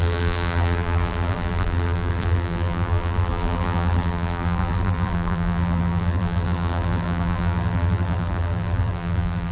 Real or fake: fake